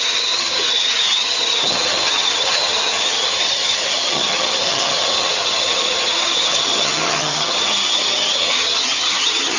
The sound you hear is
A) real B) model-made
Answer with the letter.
B